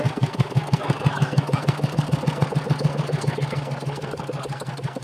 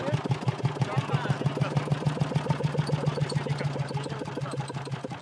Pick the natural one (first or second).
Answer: second